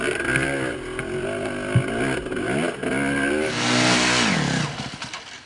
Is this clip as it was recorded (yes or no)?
yes